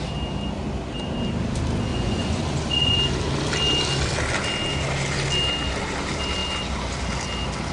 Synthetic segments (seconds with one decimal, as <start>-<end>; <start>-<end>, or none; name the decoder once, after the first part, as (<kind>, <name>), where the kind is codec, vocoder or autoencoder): 1.9-3.0 (vocoder, Vocos)